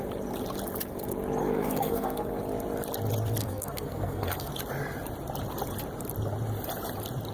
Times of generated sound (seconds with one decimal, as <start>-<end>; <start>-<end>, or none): 1.4-2.4; 3.4-4.5